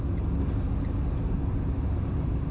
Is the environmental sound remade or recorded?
recorded